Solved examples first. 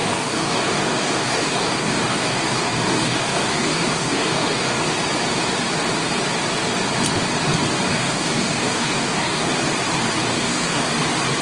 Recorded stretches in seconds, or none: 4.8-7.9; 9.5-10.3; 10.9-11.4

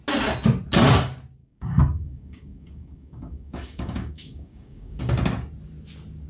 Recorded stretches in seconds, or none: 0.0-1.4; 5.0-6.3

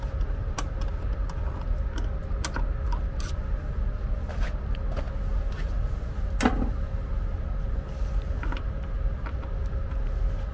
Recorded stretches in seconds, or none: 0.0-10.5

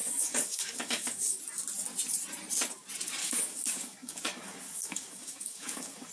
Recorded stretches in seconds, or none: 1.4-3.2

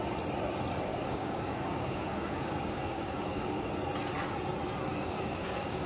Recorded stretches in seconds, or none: 0.0-0.9; 3.7-4.9

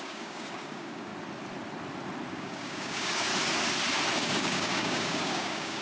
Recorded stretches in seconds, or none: 1.1-2.3; 3.3-4.2

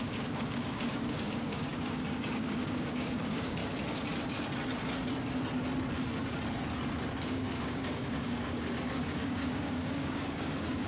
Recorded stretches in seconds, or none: 3.6-7.3